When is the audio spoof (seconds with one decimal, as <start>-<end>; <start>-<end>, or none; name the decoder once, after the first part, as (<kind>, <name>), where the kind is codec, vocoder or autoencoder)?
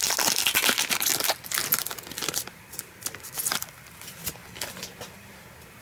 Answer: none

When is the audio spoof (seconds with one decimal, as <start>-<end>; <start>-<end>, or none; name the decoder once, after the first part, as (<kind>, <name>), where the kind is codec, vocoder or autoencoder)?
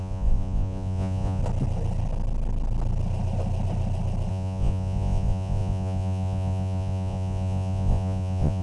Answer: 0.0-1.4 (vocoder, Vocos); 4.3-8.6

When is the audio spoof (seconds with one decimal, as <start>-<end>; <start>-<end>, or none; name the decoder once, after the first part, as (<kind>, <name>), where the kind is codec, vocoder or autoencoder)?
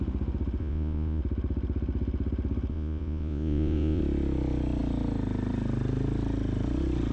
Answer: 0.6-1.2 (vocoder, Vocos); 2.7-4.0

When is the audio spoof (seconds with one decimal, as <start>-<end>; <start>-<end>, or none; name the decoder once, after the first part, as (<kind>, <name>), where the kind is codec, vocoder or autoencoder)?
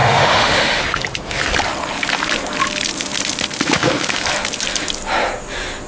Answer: 0.0-0.8 (autoencoder, DAC-VAE)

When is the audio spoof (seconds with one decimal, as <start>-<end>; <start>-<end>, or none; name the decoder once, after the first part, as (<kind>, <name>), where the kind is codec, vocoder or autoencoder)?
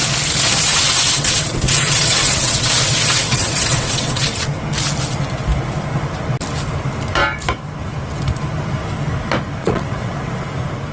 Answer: 0.7-4.6 (vocoder, WaveNeXt); 9.6-10.4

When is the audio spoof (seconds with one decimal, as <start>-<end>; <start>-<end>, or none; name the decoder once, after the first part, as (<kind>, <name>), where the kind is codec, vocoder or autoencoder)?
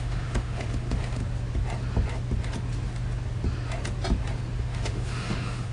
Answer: 0.0-1.2 (autoencoder, DAC-VAE); 4.6-5.7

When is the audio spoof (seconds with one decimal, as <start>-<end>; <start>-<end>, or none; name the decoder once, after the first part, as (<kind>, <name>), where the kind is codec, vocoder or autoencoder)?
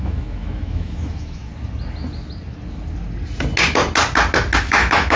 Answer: 0.0-1.5 (autoencoder, DAC-VAE); 4.6-5.2